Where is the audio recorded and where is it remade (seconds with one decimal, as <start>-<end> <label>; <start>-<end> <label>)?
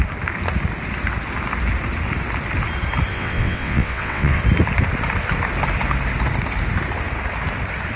0.0-3.1 recorded; 3.1-4.4 remade; 4.4-8.0 recorded